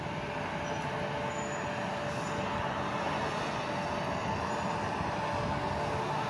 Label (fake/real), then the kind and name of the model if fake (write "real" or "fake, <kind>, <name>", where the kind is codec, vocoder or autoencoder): real